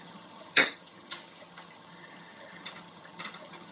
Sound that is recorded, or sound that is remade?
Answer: remade